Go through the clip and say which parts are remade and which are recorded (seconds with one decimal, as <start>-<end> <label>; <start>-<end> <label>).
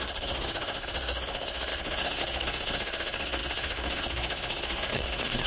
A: 0.0-5.5 remade